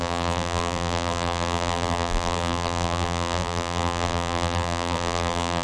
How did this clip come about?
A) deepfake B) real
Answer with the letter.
A